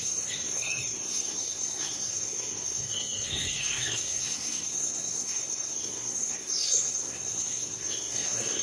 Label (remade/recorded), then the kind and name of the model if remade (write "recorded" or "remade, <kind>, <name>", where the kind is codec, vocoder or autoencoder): remade, codec, SNAC